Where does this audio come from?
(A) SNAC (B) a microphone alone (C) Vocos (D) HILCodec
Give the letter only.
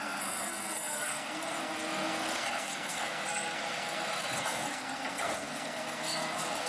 A